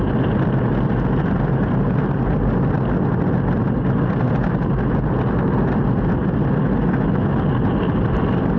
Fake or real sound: real